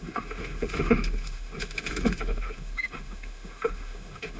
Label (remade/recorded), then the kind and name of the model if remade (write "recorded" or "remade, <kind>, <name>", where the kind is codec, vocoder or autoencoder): remade, autoencoder, DAC-VAE